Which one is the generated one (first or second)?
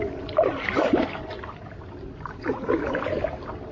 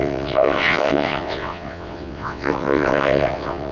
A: second